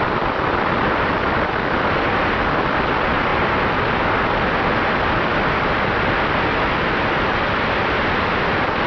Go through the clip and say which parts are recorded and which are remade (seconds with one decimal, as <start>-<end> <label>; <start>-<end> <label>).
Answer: 0.0-8.9 recorded